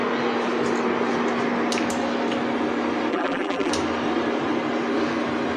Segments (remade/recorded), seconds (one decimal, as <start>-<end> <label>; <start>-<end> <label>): 0.0-3.1 recorded; 3.1-3.7 remade; 3.7-5.6 recorded